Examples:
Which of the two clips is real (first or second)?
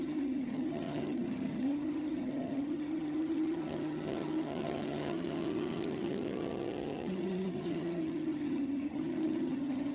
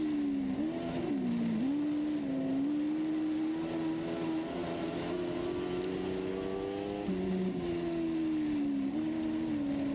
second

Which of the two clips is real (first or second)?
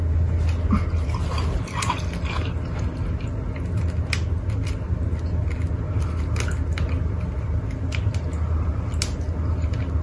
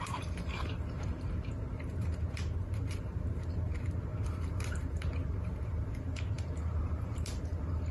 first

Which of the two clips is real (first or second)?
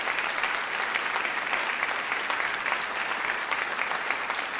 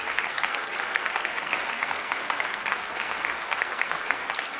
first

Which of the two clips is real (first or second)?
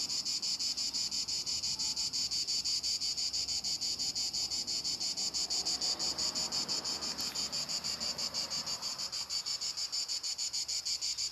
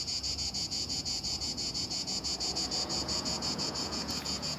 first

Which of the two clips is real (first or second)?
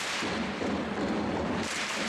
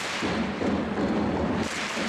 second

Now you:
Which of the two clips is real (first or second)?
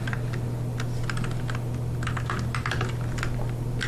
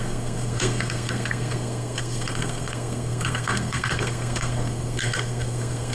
first